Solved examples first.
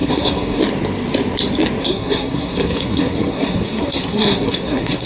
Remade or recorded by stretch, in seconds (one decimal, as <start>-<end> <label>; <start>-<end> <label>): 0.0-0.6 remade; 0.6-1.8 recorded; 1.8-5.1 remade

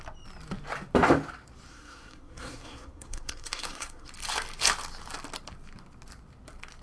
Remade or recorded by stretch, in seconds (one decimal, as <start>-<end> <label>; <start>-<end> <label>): 0.0-1.7 recorded; 1.7-4.1 remade; 4.1-6.8 recorded

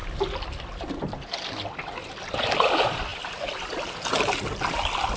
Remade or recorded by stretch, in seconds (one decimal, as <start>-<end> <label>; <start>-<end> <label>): 0.0-5.2 recorded